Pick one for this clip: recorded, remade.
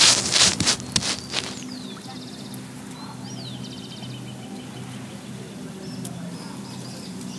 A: recorded